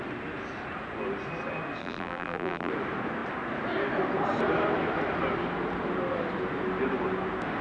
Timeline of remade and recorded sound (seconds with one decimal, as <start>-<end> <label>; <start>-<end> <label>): 0.0-1.8 recorded; 1.8-2.7 remade; 2.7-7.6 recorded